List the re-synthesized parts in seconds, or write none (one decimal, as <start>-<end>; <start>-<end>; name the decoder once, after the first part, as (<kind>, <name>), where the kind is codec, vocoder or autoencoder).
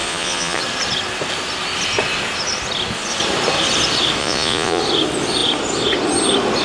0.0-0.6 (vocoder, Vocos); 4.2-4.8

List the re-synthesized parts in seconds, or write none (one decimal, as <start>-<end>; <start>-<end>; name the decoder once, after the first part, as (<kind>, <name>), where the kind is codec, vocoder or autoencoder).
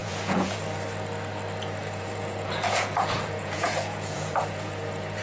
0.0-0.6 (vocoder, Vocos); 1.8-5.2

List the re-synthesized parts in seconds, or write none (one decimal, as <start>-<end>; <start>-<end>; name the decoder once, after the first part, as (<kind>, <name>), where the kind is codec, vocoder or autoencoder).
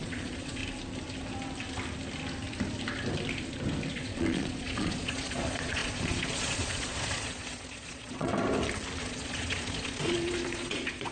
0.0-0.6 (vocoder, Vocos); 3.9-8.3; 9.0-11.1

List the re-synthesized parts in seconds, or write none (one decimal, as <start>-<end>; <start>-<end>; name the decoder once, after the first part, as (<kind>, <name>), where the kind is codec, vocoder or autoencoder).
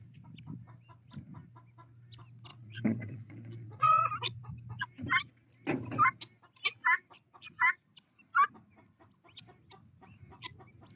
2.5-4.0 (vocoder, Vocos)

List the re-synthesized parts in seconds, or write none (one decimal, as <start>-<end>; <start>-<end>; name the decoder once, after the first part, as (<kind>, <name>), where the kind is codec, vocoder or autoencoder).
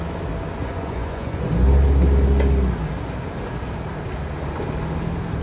0.6-1.5 (vocoder, Vocos)